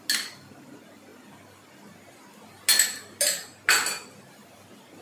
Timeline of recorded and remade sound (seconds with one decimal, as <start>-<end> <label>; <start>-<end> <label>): 0.0-5.0 recorded